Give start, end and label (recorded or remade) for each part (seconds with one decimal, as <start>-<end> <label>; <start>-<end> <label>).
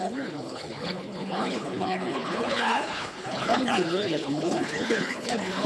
0.0-5.7 remade